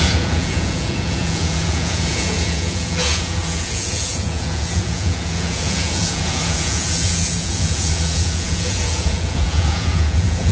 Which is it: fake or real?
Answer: fake